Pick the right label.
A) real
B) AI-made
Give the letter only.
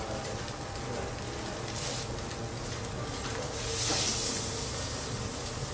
A